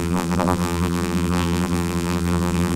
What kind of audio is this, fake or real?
fake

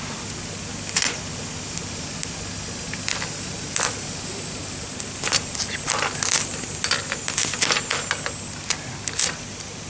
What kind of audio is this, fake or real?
real